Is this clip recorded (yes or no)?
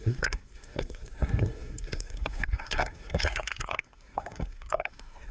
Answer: no